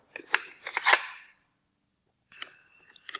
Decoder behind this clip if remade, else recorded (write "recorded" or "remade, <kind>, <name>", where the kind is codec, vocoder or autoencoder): recorded